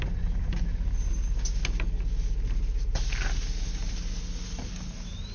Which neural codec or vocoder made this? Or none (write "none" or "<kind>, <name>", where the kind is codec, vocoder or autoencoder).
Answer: none